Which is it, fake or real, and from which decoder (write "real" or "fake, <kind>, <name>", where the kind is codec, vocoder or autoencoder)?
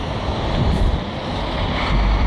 fake, vocoder, BigVGAN v2